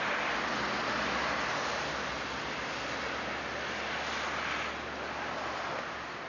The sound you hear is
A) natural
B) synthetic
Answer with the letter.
A